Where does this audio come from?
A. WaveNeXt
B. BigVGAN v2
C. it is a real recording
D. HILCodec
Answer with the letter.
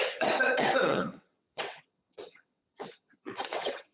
A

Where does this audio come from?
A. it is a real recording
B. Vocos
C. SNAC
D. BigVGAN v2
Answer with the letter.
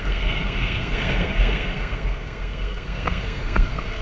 C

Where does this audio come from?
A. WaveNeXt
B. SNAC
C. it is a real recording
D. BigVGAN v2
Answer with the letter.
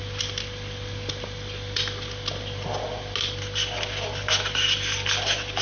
C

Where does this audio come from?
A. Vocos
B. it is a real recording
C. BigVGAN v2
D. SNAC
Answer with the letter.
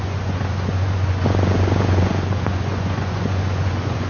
A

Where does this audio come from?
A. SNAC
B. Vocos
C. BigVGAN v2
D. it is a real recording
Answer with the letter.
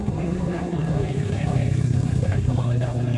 A